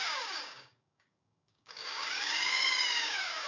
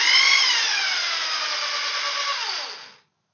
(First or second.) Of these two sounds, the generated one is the first